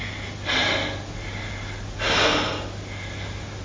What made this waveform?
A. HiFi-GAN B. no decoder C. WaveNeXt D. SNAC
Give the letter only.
B